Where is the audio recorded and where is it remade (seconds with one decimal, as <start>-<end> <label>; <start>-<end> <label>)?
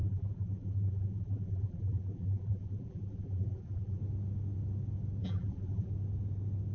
0.0-4.0 remade; 4.0-5.2 recorded; 5.2-5.9 remade; 5.9-6.7 recorded